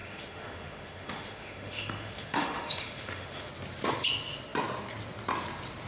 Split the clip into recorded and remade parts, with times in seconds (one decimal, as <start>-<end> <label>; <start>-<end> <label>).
0.0-3.5 remade; 3.5-5.9 recorded